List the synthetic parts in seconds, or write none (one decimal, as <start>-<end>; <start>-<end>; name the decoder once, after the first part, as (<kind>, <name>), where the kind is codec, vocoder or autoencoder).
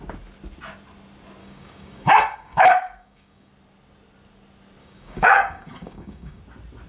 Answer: 1.4-3.5 (codec, DAC); 4.8-6.4